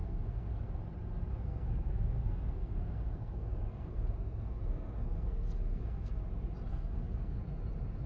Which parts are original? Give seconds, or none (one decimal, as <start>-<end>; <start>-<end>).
0.8-1.3; 6.2-6.7; 7.4-8.1